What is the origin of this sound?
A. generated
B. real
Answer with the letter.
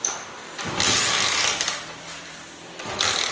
A